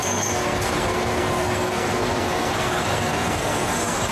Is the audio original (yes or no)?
no